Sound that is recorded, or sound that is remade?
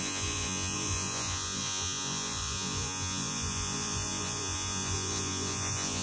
remade